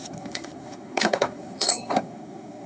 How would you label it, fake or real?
fake